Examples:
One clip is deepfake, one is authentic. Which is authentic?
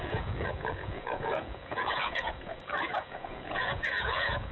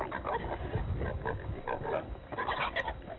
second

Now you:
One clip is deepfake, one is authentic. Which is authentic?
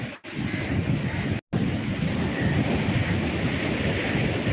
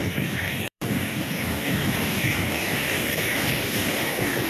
first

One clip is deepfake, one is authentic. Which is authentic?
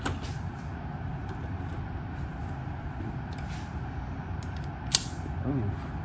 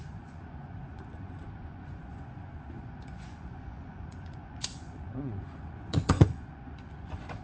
first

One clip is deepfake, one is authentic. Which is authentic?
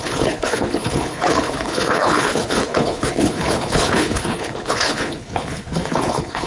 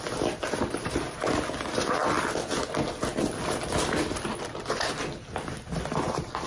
second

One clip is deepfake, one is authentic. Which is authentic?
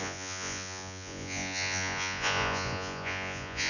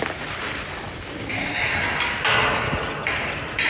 second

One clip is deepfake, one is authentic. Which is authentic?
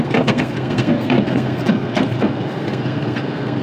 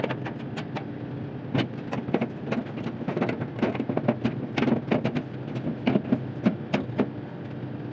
second